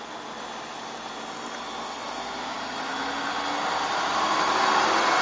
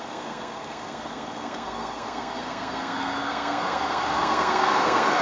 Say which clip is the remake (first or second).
second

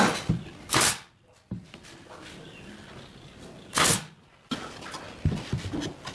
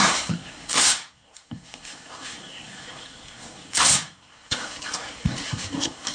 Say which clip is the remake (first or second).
second